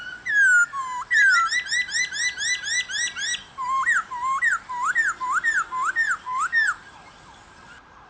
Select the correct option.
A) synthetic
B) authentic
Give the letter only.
B